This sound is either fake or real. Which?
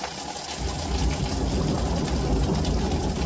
real